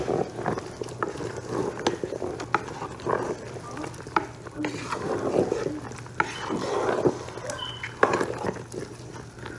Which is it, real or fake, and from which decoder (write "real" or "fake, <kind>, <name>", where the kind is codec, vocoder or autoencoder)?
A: real